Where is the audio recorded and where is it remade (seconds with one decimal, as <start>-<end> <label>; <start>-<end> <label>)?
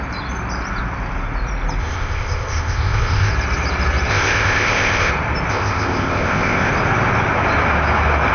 0.0-1.8 recorded; 1.8-3.3 remade; 3.3-4.1 recorded; 4.1-5.1 remade; 5.1-5.5 recorded; 5.5-6.7 remade; 6.7-8.3 recorded